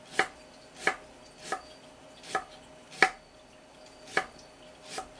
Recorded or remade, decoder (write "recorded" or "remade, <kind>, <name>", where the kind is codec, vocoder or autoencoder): recorded